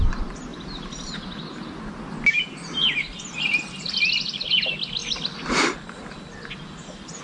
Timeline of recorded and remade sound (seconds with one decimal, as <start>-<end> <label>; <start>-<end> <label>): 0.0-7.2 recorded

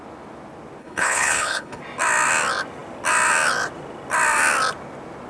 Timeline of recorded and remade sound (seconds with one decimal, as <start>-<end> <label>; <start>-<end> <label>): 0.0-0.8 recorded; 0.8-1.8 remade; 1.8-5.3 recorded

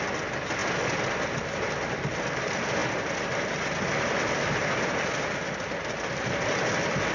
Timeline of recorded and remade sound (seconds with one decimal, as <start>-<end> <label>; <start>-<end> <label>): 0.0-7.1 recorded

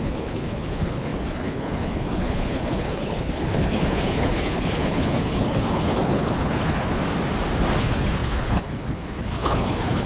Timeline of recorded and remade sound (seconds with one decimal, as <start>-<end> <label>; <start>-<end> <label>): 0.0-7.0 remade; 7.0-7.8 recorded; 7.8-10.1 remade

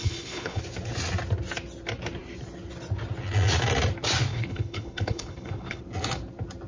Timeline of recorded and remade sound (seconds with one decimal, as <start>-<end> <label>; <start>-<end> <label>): 0.0-0.6 remade; 0.6-4.3 recorded; 4.3-5.8 remade; 5.8-6.7 recorded